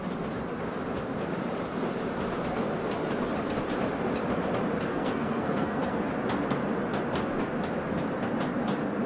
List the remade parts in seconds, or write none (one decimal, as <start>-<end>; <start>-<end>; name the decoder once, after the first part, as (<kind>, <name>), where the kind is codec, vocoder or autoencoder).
4.9-6.1 (codec, SNAC)